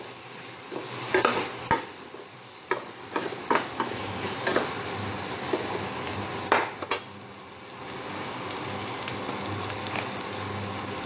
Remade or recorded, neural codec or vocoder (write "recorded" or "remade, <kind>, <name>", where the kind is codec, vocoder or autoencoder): recorded